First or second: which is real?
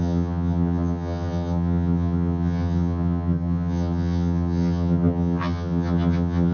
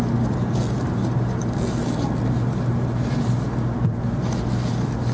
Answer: second